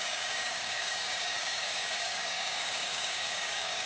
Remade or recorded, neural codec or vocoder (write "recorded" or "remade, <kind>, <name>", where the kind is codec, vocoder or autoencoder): remade, codec, DAC